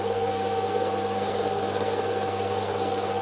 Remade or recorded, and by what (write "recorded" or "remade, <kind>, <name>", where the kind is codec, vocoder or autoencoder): remade, codec, SNAC